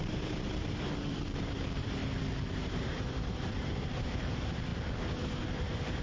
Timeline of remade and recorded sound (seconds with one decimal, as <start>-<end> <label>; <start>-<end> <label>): 0.0-2.0 remade; 2.0-2.7 recorded; 2.7-4.7 remade; 4.7-5.5 recorded; 5.5-6.0 remade